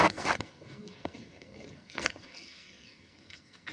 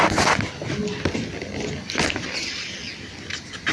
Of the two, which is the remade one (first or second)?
first